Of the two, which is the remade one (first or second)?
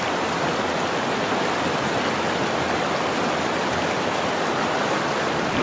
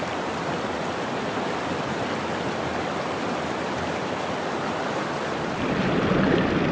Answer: second